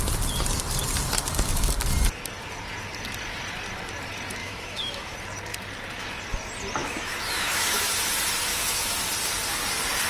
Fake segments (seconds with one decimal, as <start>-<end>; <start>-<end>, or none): 4.4-5.1; 6.8-7.9; 8.5-9.0